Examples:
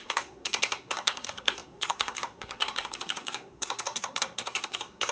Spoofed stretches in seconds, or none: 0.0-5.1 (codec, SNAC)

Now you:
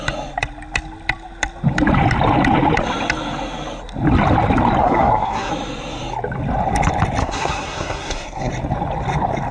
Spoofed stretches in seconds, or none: 4.8-5.5 (codec, SNAC); 7.2-8.5

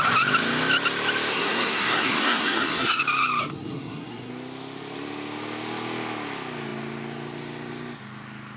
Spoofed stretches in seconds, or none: 1.3-3.0 (codec, SNAC); 3.4-4.3

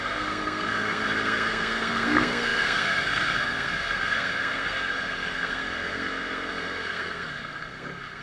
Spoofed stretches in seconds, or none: 0.0-8.2 (codec, SNAC)

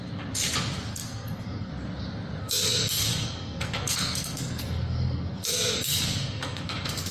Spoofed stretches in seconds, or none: 0.9-1.7 (codec, SNAC); 2.4-7.1

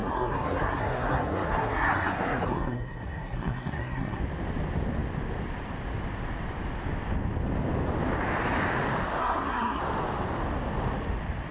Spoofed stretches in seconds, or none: 0.0-4.2 (codec, SNAC); 9.2-9.8